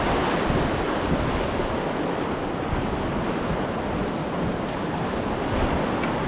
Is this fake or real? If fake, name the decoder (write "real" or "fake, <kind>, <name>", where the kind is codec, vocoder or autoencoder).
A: real